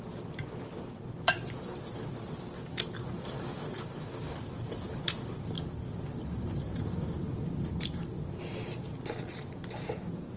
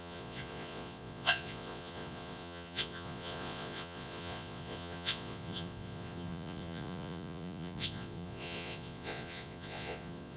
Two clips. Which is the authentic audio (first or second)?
first